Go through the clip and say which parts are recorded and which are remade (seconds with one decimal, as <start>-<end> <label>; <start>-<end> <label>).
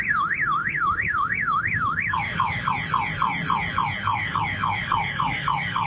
0.0-0.6 recorded; 0.6-2.7 remade; 2.7-4.0 recorded; 4.0-5.9 remade